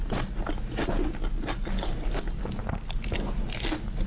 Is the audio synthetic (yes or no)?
no